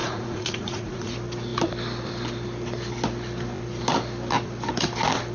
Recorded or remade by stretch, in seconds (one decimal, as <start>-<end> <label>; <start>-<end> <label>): 0.0-1.1 remade; 1.1-5.3 recorded

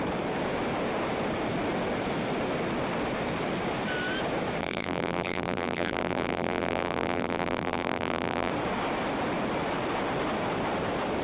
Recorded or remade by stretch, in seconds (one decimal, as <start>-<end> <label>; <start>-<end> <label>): 0.0-4.6 recorded; 4.6-8.5 remade; 8.5-11.2 recorded